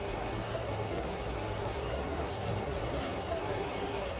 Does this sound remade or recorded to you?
remade